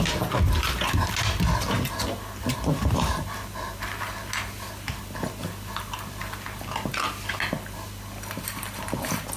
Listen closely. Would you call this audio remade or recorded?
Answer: recorded